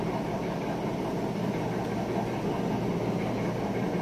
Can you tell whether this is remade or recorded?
recorded